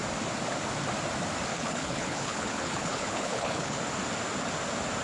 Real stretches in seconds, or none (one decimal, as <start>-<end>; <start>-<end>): 0.0-1.5; 3.8-5.0